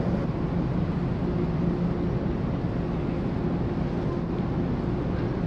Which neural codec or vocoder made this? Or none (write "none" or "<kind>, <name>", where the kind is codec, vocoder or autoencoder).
none